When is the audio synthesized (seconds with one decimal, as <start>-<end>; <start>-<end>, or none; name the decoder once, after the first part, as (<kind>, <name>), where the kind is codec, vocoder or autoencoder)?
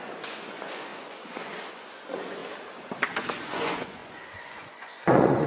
0.0-2.4 (vocoder, Vocos); 3.3-5.5